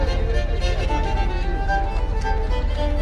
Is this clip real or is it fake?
real